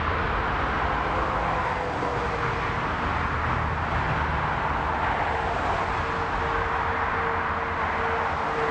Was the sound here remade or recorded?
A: recorded